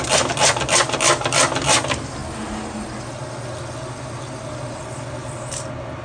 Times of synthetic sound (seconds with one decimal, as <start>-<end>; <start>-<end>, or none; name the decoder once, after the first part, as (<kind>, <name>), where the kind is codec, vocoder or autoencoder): none